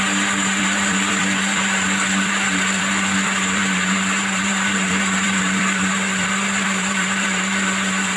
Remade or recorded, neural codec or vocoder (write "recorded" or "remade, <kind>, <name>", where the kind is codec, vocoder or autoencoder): remade, vocoder, BigVGAN v2